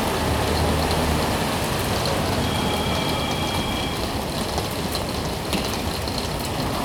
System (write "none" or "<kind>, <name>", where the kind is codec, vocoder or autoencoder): none